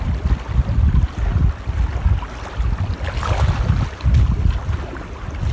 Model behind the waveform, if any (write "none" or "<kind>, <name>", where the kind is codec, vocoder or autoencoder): none